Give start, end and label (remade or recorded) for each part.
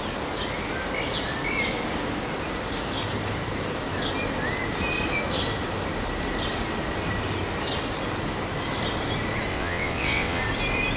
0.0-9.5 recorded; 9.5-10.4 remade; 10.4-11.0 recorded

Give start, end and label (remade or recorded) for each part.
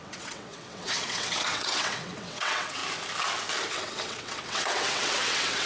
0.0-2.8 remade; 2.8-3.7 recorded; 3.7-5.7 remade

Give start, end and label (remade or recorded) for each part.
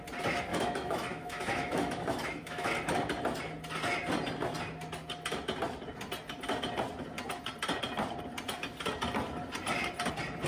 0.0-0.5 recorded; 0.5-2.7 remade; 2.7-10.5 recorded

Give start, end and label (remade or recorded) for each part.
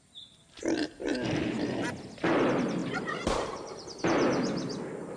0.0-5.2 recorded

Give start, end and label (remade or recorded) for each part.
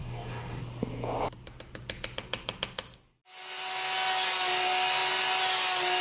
0.0-0.6 remade; 0.6-6.0 recorded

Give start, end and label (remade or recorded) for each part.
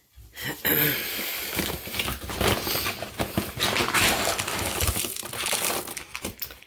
0.0-1.1 recorded; 1.1-1.7 remade; 1.7-6.7 recorded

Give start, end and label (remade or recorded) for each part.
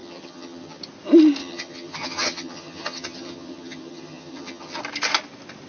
0.0-0.8 remade; 0.8-1.4 recorded; 1.4-4.8 remade; 4.8-5.7 recorded